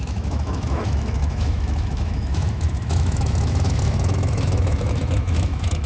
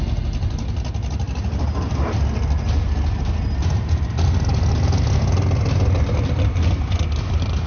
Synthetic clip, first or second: first